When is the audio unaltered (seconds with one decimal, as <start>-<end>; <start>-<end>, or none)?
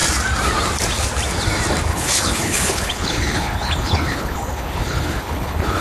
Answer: 0.0-1.9